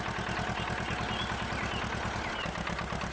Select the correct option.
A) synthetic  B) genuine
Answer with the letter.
B